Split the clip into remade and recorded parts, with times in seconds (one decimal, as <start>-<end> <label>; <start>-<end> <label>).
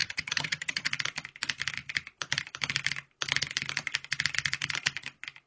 0.0-0.9 remade; 0.9-5.5 recorded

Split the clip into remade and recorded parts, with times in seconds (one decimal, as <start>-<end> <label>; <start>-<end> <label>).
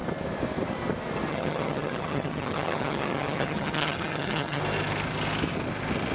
0.0-1.3 recorded; 1.3-4.6 remade; 4.6-6.1 recorded